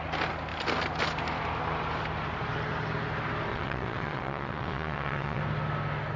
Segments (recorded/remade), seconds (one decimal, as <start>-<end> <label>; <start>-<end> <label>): 0.0-3.5 recorded; 3.5-5.4 remade; 5.4-6.2 recorded